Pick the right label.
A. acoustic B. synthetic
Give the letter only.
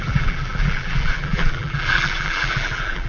B